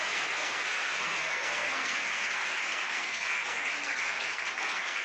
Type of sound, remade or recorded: remade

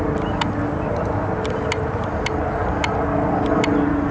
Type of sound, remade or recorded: recorded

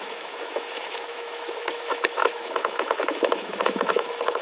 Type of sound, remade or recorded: remade